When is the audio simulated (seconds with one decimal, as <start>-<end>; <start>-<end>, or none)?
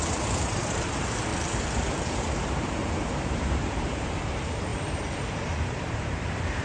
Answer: 0.0-1.3; 2.1-6.6